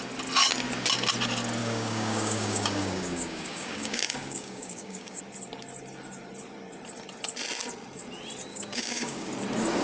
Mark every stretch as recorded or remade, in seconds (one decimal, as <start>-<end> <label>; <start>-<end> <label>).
0.0-1.6 recorded; 1.6-5.2 remade; 5.2-8.5 recorded; 8.5-9.3 remade; 9.3-9.8 recorded